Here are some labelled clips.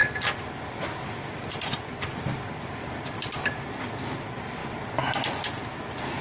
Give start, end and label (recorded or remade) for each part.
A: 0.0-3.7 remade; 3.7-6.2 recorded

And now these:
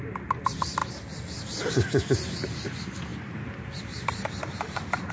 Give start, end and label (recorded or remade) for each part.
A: 0.0-0.8 remade; 0.8-1.6 recorded; 1.6-5.1 remade